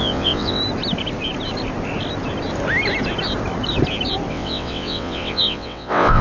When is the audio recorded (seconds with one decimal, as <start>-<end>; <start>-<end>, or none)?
0.6-4.3